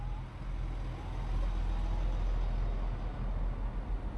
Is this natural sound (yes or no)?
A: yes